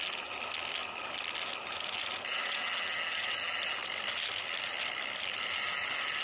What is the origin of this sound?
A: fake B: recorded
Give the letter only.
B